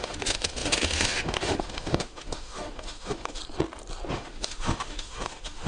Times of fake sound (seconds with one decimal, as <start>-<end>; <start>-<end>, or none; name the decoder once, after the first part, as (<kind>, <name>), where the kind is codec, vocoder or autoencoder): 0.0-3.4 (autoencoder, DAC-VAE); 4.1-5.7